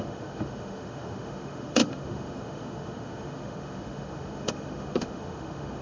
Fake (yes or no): yes